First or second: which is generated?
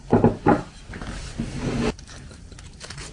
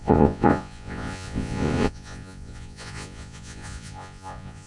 second